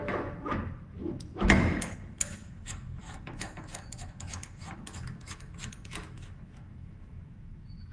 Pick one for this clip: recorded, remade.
remade